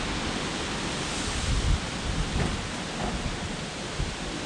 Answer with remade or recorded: recorded